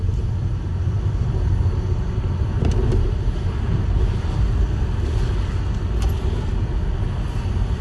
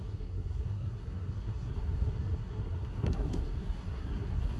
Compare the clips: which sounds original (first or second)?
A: first